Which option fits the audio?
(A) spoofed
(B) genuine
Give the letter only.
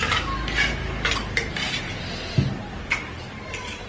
B